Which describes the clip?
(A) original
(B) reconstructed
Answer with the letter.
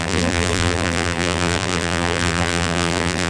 B